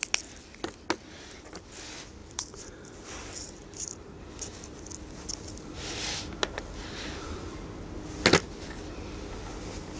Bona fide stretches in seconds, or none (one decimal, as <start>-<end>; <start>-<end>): 0.0-2.2; 4.2-10.0